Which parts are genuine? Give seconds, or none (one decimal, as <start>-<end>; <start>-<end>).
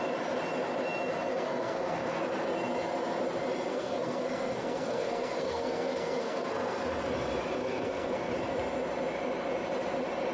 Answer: 0.0-1.3; 2.2-3.7; 6.8-7.6; 8.3-10.3